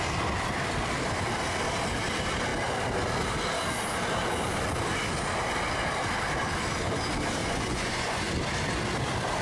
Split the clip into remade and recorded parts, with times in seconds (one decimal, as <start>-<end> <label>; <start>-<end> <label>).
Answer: 0.0-7.4 recorded; 7.4-8.3 remade; 8.3-9.4 recorded